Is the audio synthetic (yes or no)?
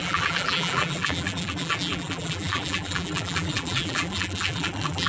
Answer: yes